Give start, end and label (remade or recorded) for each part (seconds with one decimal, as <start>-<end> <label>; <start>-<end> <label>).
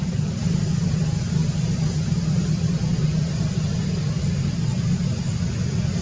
0.0-6.0 recorded